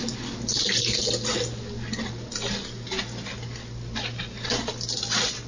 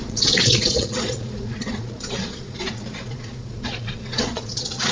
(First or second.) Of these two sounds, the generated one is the second